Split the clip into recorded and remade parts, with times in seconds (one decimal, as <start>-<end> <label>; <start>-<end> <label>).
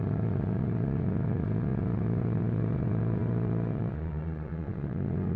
0.0-5.4 remade